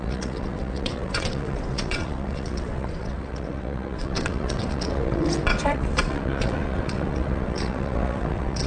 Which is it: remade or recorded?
remade